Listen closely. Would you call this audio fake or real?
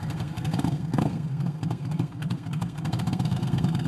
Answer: fake